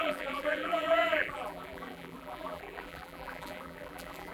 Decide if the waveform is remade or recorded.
remade